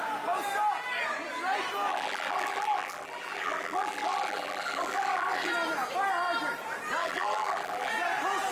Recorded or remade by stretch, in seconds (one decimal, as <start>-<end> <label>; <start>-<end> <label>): 0.0-1.9 recorded; 1.9-5.5 remade; 5.5-7.0 recorded; 7.0-7.9 remade; 7.9-8.5 recorded